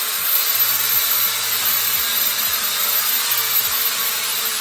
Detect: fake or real fake